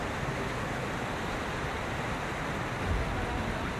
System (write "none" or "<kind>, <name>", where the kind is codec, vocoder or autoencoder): none